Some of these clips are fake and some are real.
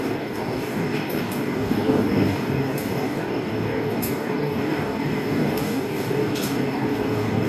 fake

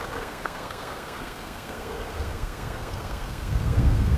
fake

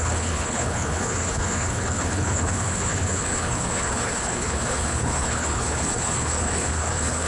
fake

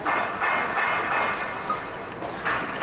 real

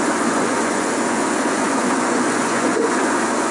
fake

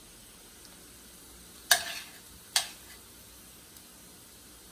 real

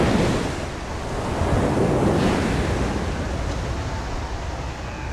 real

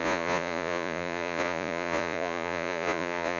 fake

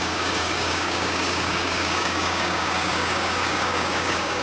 fake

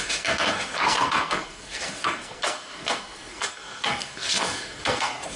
fake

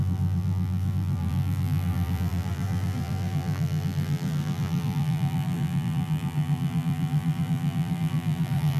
fake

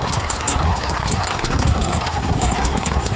fake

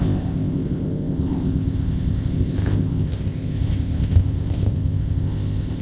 fake